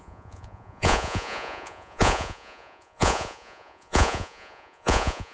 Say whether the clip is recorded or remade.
remade